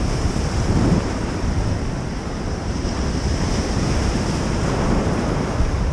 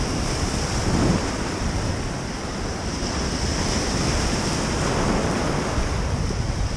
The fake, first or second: first